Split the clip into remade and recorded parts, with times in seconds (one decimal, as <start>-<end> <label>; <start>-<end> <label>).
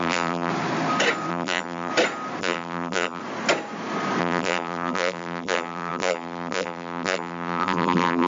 0.0-0.5 remade; 0.5-1.3 recorded; 1.3-1.9 remade; 1.9-2.4 recorded; 2.4-3.2 remade; 3.2-4.2 recorded; 4.2-8.3 remade